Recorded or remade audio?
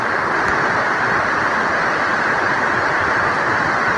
recorded